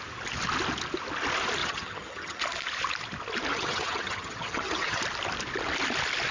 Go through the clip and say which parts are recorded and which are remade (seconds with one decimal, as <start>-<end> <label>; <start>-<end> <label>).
0.0-1.6 recorded; 1.6-2.4 remade; 2.4-3.5 recorded; 3.5-5.0 remade; 5.0-6.3 recorded